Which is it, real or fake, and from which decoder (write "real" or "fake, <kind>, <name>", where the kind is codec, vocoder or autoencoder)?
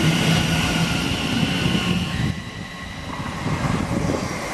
real